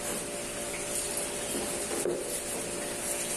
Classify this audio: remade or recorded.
recorded